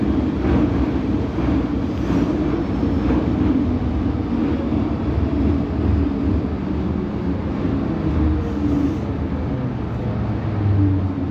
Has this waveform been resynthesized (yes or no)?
no